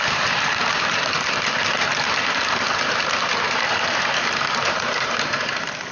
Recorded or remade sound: remade